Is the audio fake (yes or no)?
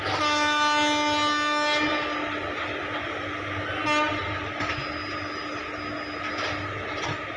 no